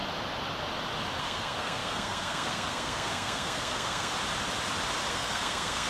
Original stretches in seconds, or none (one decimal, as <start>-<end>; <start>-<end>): 0.0-1.2; 4.1-5.1